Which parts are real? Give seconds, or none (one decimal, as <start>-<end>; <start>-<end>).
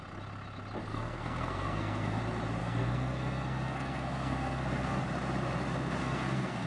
0.0-0.9; 2.2-2.6; 5.0-6.0